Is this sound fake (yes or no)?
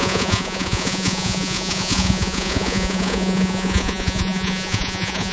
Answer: yes